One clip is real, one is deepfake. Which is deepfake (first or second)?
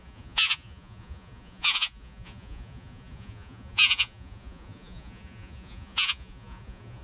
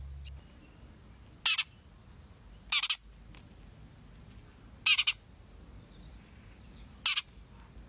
first